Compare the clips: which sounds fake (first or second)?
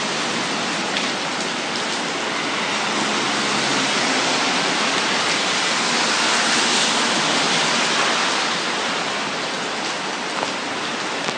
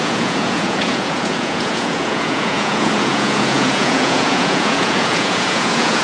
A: second